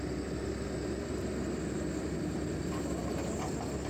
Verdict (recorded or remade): recorded